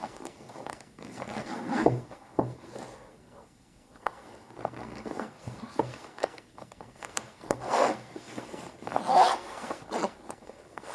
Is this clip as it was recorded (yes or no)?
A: no